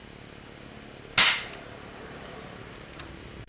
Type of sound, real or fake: real